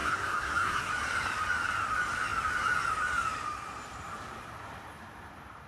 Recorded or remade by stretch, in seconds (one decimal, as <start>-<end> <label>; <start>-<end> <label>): 0.0-0.9 remade; 0.9-5.7 recorded